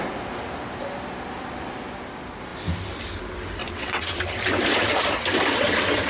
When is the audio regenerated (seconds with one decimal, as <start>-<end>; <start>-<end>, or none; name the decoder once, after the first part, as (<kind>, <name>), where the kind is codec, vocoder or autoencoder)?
3.6-4.1 (vocoder, WaveNeXt)